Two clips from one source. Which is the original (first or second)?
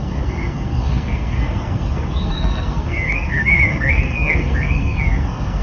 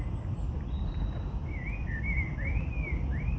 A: second